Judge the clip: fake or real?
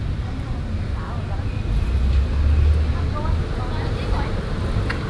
real